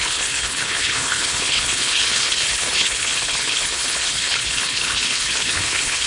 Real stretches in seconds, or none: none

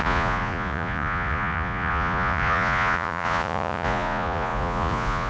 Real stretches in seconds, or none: none

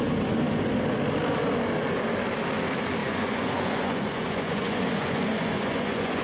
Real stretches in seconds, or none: 0.0-3.0

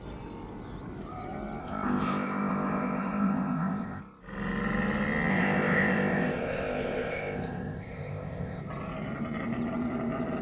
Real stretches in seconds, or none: 0.0-1.6; 4.0-5.3; 8.6-10.4